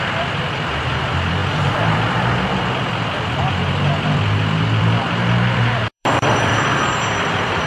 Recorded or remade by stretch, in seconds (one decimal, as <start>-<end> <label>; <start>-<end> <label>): 0.0-6.5 remade; 6.5-7.2 recorded; 7.2-7.7 remade